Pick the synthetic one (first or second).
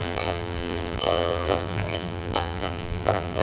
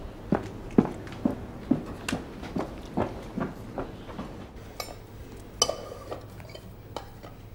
first